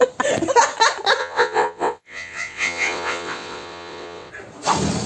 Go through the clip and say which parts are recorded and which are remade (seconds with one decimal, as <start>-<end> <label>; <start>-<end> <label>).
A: 0.0-1.2 recorded; 1.2-4.3 remade; 4.3-5.1 recorded